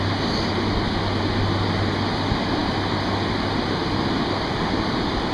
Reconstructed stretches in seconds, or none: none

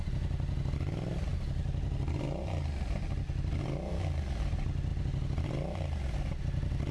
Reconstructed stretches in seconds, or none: none

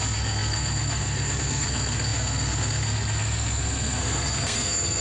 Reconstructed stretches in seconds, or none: 0.0-5.0 (codec, SNAC)

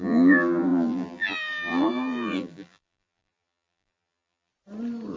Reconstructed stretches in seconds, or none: 0.0-4.5 (vocoder, BigVGAN v2)

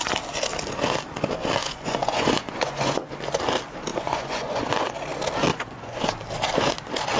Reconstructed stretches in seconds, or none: 1.6-3.1 (vocoder, Vocos); 3.9-4.9; 5.5-6.1

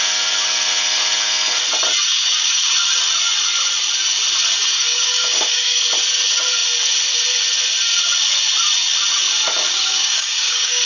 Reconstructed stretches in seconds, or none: 2.1-2.7 (codec, DAC); 4.7-5.8; 9.7-10.9